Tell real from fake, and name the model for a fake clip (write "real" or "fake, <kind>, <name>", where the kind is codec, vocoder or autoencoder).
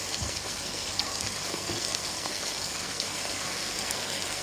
fake, codec, SNAC